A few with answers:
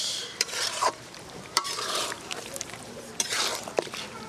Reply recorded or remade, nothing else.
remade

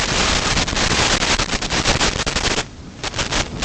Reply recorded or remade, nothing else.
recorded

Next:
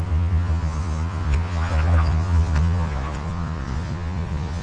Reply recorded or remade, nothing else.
remade